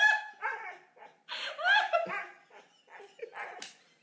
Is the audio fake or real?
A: real